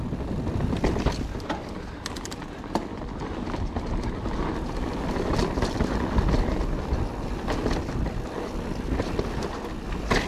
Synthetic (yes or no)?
no